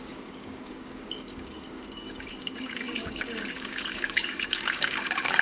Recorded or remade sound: remade